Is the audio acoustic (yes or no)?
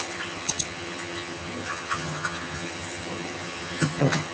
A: no